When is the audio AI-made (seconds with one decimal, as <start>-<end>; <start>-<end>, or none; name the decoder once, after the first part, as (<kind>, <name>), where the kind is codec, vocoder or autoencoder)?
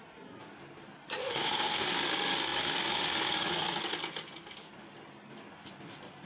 1.2-1.9 (autoencoder, DAC-VAE)